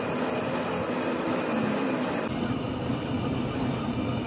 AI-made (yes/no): no